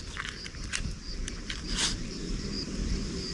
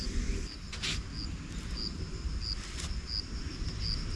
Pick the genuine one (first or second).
second